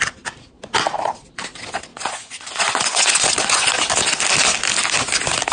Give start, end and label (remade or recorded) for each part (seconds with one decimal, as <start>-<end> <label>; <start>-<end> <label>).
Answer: 0.0-1.9 recorded; 1.9-3.7 remade; 3.7-5.5 recorded